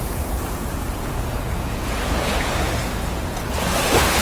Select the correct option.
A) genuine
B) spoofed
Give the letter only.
B